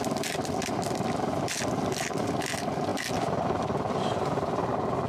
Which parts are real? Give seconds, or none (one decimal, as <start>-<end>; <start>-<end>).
0.0-5.1